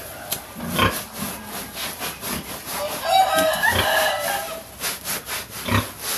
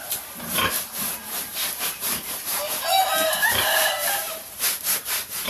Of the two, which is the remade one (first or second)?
second